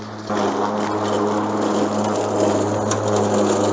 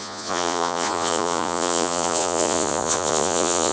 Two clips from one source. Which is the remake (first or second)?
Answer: second